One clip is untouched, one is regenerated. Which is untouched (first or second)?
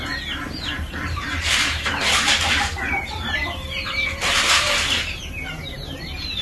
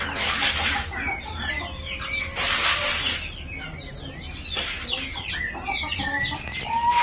second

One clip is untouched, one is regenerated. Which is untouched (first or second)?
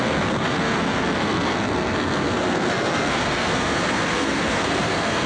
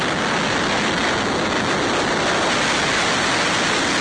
second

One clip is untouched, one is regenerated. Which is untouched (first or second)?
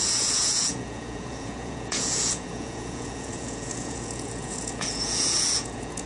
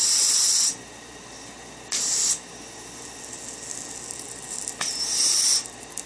second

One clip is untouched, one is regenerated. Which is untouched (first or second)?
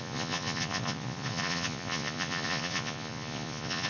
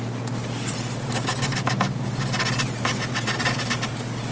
second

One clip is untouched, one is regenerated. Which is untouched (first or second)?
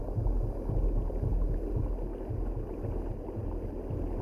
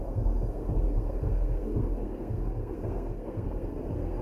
first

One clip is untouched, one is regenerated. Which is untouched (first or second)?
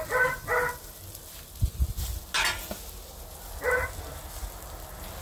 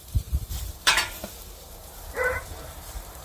first